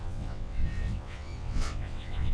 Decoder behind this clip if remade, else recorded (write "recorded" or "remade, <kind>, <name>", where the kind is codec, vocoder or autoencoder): remade, vocoder, WaveNeXt